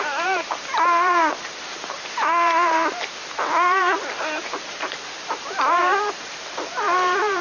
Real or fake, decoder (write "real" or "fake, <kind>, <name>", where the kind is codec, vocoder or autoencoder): fake, vocoder, BigVGAN v2